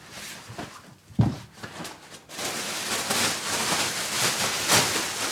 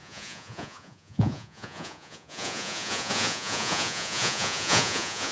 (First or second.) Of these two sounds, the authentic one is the first